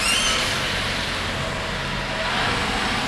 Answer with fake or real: real